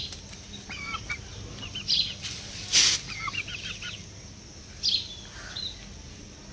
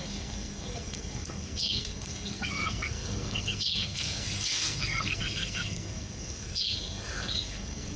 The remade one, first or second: second